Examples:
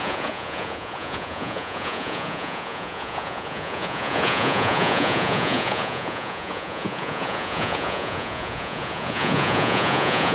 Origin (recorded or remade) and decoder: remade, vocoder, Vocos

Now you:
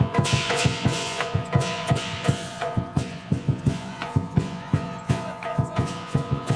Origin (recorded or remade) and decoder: remade, vocoder, Vocos